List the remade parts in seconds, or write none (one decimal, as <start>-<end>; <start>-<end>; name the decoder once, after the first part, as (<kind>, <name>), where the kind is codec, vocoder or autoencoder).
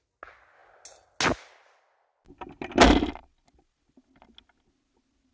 none